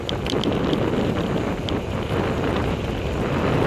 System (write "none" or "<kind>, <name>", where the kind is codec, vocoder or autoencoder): none